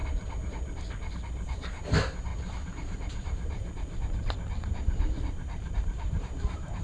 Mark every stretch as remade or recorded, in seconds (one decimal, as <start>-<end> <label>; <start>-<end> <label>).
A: 0.0-2.3 recorded; 2.3-6.8 remade